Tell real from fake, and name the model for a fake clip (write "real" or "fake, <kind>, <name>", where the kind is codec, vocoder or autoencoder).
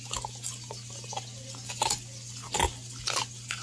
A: real